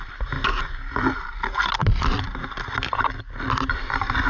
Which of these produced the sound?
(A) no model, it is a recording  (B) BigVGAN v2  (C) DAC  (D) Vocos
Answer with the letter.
A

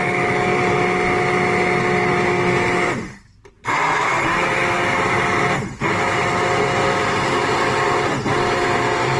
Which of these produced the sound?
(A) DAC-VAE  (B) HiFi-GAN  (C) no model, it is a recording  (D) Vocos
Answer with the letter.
C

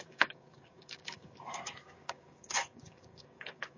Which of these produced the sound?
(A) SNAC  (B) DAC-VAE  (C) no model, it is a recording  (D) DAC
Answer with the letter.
D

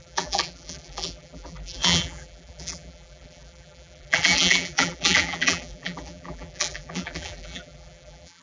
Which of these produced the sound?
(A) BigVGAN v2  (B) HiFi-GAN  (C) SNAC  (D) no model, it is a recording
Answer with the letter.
A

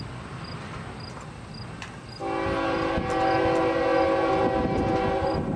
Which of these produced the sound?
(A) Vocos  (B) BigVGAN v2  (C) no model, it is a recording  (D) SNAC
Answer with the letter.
C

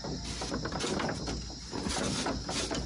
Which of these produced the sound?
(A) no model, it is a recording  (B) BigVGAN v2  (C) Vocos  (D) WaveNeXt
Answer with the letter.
A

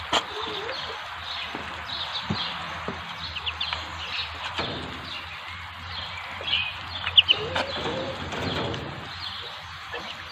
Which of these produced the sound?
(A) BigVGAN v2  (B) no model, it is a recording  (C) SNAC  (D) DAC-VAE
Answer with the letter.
B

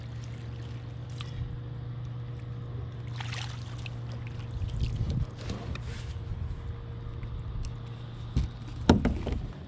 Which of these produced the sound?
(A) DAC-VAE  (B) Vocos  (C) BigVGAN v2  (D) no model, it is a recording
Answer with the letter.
D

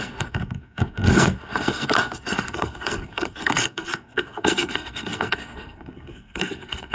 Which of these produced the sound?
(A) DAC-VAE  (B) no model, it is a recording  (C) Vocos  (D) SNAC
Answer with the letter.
D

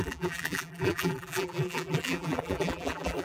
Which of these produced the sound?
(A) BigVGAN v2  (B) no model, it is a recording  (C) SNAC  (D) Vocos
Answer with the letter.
A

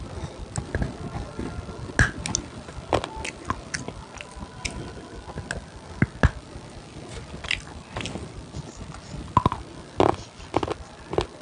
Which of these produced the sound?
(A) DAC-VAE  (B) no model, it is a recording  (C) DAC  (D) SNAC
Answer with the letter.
B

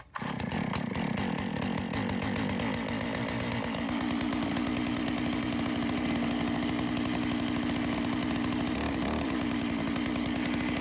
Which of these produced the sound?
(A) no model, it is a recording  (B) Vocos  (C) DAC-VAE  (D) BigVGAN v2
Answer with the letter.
A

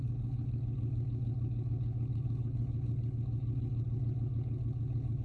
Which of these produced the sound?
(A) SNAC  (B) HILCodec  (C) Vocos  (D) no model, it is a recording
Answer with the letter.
B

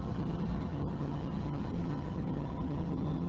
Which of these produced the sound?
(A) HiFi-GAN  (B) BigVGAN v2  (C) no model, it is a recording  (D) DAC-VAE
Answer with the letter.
A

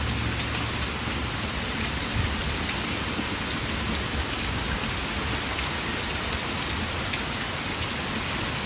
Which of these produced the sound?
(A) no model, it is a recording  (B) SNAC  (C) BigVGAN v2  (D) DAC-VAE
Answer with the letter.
A